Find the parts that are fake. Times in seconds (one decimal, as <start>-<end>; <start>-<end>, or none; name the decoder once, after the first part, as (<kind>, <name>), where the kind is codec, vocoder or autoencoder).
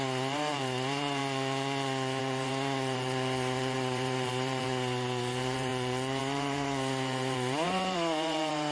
0.0-1.2 (vocoder, BigVGAN v2); 2.2-5.7; 6.2-8.7